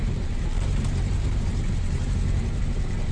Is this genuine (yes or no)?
no